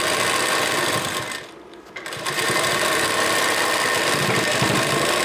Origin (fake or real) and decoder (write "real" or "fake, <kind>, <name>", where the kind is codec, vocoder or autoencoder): real